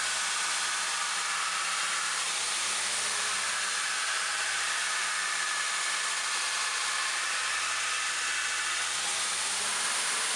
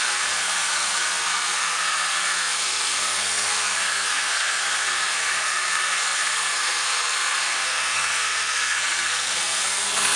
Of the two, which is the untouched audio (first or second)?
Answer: first